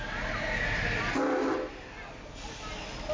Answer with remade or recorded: recorded